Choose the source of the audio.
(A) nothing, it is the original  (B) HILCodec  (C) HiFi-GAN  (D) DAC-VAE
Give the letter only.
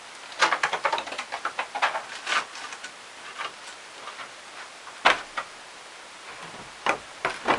A